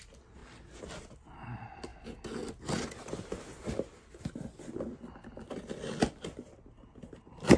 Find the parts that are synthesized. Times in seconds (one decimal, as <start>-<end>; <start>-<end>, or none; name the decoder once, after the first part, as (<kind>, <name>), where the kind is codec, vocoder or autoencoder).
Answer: none